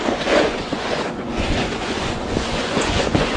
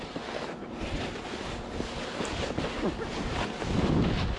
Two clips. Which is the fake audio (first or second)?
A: first